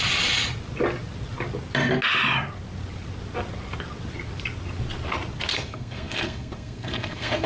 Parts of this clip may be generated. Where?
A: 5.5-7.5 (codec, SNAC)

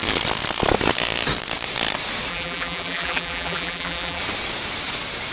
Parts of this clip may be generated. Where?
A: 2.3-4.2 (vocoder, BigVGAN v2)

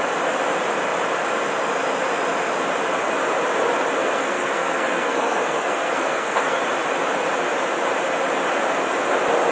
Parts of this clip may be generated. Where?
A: 4.0-6.6 (codec, SNAC)

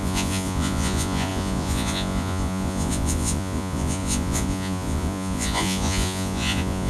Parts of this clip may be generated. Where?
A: 0.0-6.9 (vocoder, Vocos)

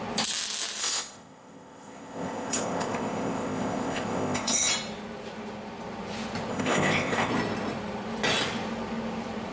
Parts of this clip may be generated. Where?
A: 0.8-4.7 (codec, ZipCodec); 6.5-7.3